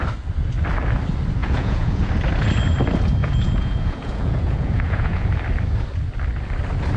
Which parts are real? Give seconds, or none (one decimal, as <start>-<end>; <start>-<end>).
0.0-1.4; 2.1-3.2; 5.3-7.0